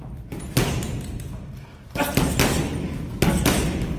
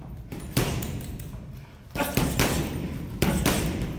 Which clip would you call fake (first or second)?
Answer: second